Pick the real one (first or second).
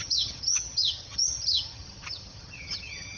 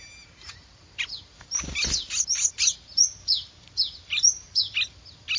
second